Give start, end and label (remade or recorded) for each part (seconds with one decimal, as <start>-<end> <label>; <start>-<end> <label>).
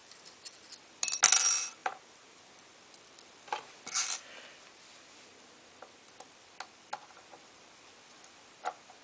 0.0-0.6 remade; 0.6-1.8 recorded; 1.8-2.4 remade; 2.4-9.0 recorded